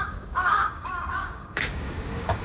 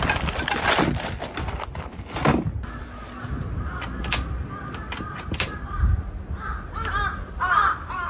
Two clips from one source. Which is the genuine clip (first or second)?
second